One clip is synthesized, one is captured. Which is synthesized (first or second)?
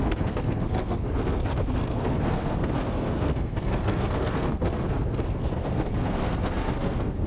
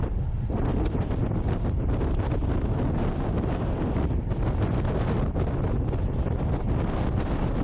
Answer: first